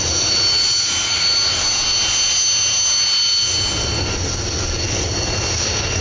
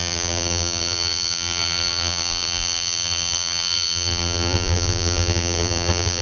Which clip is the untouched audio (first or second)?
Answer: first